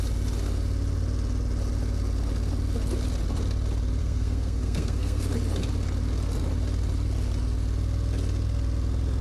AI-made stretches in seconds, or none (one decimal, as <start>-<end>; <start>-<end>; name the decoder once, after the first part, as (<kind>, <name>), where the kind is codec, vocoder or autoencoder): 4.0-5.2 (codec, SNAC)